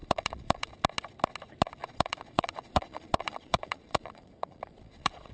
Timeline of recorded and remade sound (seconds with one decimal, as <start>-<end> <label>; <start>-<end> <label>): 0.0-0.7 remade; 0.7-1.8 recorded; 1.8-5.3 remade